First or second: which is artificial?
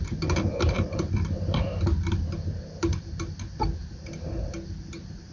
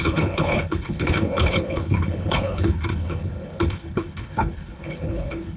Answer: second